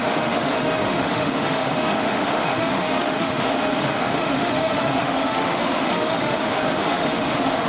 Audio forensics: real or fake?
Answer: fake